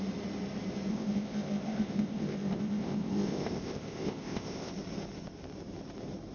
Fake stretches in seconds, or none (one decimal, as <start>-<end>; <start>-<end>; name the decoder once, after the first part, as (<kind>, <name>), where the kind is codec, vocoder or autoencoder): 0.9-4.7 (codec, ZipCodec)